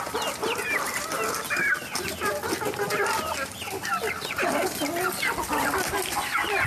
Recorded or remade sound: recorded